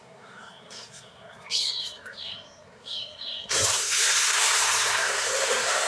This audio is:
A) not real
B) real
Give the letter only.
A